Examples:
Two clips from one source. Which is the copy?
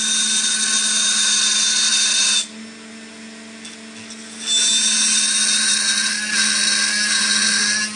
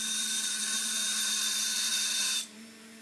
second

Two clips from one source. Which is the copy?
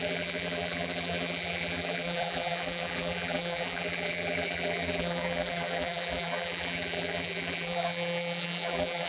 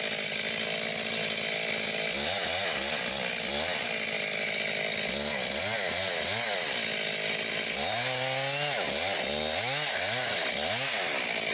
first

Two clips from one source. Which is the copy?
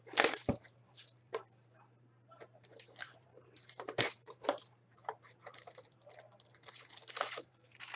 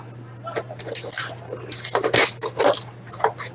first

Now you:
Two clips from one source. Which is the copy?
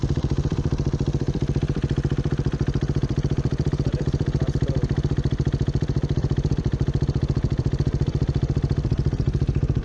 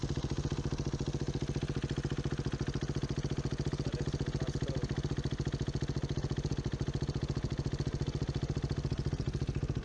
first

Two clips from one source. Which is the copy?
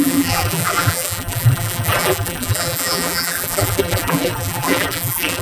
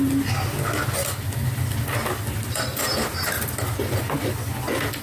first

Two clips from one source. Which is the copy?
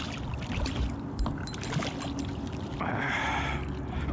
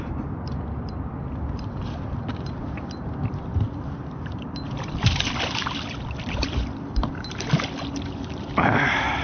second